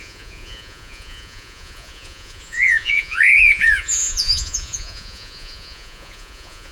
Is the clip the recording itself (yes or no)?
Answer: no